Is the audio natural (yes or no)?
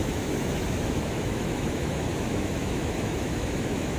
no